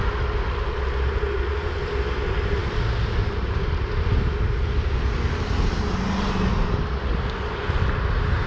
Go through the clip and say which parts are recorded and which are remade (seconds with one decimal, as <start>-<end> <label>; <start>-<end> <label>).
0.0-8.5 recorded